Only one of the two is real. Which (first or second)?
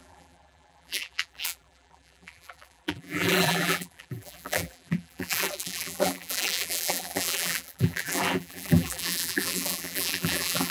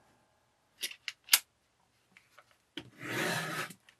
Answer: second